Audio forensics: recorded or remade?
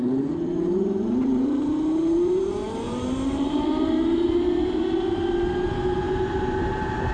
remade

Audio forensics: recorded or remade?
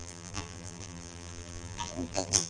remade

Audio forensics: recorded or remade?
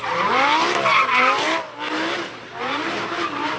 recorded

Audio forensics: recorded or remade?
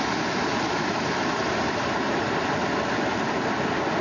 recorded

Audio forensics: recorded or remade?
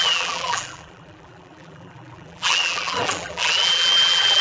remade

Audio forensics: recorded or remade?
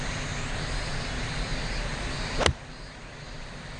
recorded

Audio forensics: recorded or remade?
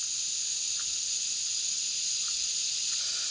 recorded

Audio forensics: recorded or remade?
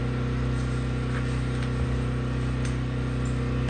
recorded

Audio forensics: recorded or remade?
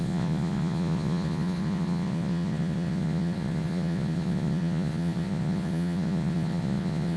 remade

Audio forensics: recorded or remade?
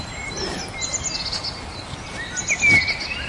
recorded